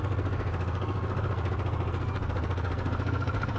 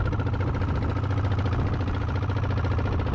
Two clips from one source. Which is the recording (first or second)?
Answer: second